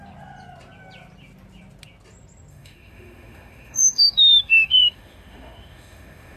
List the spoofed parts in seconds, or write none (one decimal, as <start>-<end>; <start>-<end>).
2.5-6.4